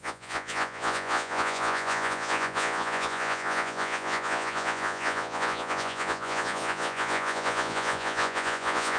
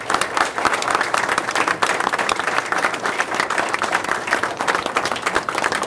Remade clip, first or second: first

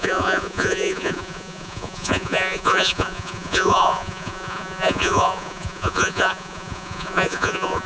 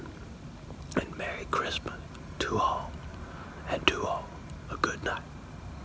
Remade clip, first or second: first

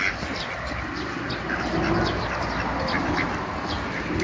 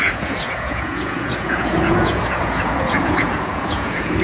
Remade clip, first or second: second